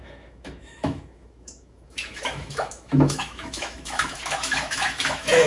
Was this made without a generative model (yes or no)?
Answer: no